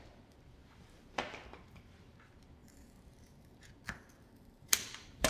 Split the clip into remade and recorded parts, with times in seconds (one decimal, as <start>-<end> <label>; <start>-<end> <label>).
0.0-5.3 remade